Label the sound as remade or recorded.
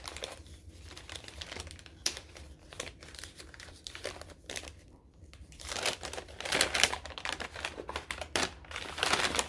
remade